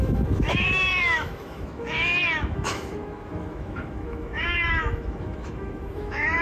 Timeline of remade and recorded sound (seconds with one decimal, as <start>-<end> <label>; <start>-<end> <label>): 0.0-6.4 remade